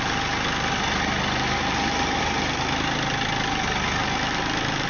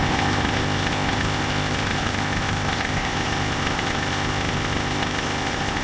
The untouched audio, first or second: first